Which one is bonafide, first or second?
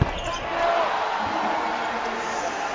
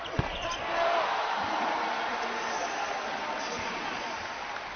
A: first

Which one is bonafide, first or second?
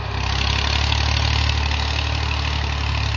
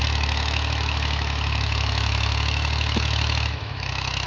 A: first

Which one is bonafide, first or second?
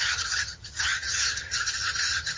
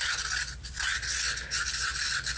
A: second